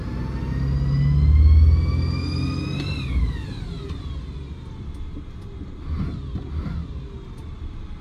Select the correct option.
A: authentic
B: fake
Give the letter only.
A